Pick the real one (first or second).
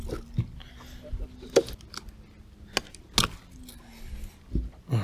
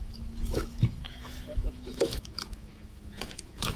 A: first